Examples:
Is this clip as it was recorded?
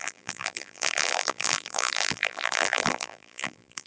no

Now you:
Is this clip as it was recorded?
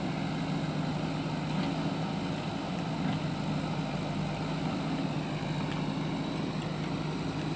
yes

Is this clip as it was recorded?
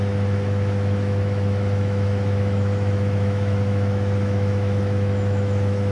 no